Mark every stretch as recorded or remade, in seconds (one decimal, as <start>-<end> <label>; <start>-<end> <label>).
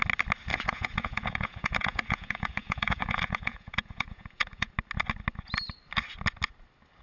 0.0-0.5 recorded; 0.5-4.7 remade; 4.7-7.0 recorded